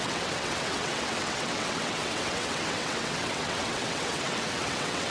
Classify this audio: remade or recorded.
remade